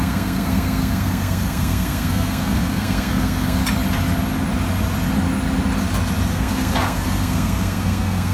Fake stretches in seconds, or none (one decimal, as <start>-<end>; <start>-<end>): 0.0-3.6; 6.3-8.3